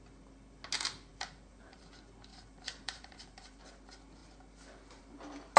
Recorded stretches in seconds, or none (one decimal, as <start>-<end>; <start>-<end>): 0.0-1.1; 1.8-2.3; 3.6-5.6

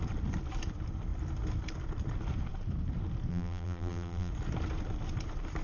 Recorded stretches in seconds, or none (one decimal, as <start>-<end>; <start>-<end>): 0.0-3.3; 4.3-5.6